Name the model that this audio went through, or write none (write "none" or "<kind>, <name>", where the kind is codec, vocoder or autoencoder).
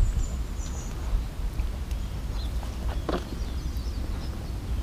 none